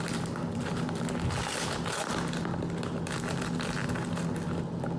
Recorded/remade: recorded